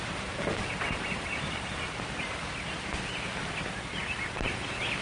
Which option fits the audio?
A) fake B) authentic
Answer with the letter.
B